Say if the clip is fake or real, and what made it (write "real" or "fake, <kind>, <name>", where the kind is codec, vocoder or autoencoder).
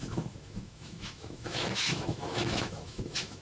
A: fake, autoencoder, DAC-VAE